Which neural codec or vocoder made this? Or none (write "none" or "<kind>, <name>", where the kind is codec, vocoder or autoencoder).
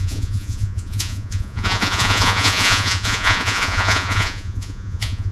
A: vocoder, Vocos